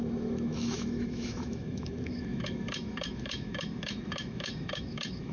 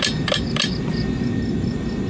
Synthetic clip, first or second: first